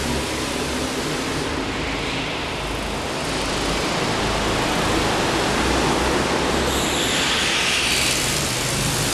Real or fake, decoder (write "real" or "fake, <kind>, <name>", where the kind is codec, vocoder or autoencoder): real